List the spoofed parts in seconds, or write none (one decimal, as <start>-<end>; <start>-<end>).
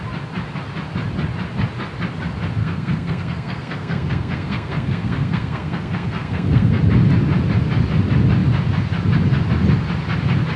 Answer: 2.6-6.8